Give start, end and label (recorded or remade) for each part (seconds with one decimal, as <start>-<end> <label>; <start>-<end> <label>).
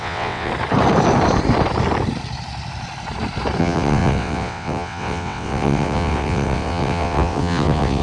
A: 0.0-0.5 remade; 0.5-3.6 recorded; 3.6-8.0 remade